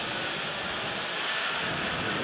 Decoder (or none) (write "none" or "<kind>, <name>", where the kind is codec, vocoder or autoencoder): none